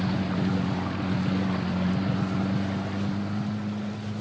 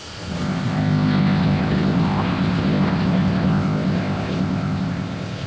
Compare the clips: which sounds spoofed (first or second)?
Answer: second